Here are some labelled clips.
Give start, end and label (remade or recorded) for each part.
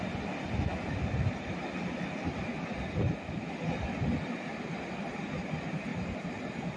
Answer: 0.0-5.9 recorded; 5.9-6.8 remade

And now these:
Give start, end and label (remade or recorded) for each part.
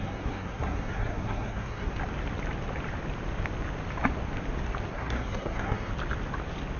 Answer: 0.0-1.9 remade; 1.9-4.9 recorded; 4.9-5.9 remade; 5.9-6.8 recorded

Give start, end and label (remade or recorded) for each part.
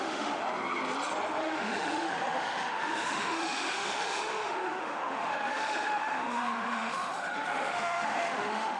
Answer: 0.0-0.4 remade; 0.4-1.4 recorded; 1.4-8.8 remade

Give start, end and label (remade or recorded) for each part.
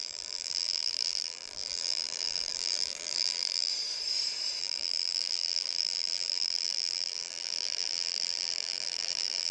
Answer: 0.0-3.7 remade; 3.7-4.6 recorded; 4.6-9.5 remade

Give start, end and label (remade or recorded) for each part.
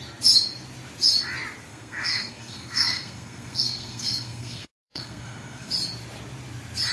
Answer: 0.0-1.7 recorded; 1.7-5.7 remade; 5.7-6.9 recorded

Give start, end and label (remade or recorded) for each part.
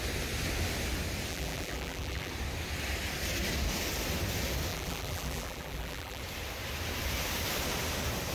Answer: 0.0-1.3 recorded; 1.3-2.3 remade; 2.3-4.7 recorded; 4.7-6.2 remade; 6.2-8.3 recorded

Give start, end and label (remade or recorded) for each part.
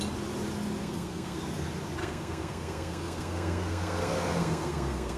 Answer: 0.0-0.8 recorded; 0.8-1.4 remade; 1.4-2.0 recorded; 2.0-5.2 remade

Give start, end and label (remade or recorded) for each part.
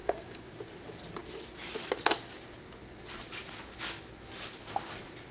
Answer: 0.0-0.5 remade; 0.5-5.3 recorded